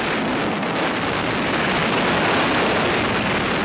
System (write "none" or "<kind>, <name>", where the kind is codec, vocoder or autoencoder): none